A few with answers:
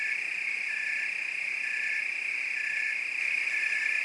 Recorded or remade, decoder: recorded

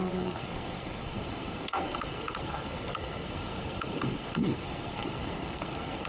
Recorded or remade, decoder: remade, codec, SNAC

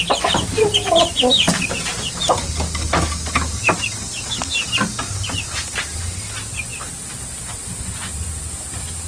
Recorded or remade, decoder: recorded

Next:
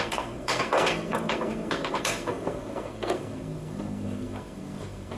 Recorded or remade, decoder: remade, codec, SNAC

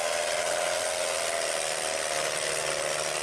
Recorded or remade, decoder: recorded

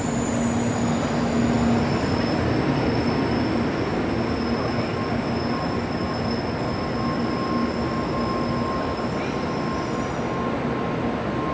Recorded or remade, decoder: recorded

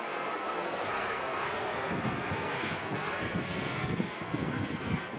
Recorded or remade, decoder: remade, codec, SNAC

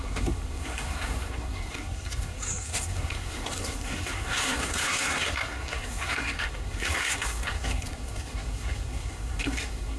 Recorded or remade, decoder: remade, codec, SNAC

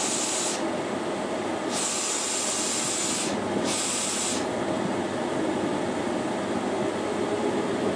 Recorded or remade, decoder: recorded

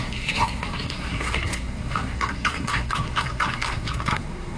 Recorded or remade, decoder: remade, codec, SNAC